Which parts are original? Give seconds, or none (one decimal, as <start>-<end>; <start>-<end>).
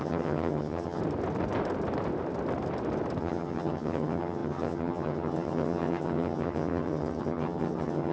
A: 1.0-3.2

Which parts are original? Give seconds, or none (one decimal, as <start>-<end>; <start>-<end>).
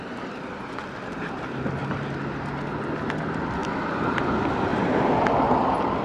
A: 0.0-3.6; 4.2-4.7; 5.3-6.0